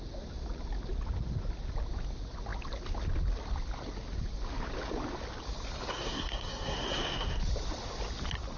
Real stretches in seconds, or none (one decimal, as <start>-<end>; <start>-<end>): 0.0-5.9; 7.4-8.6